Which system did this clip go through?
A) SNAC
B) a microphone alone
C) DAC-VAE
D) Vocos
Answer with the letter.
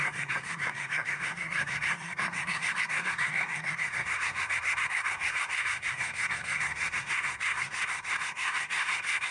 A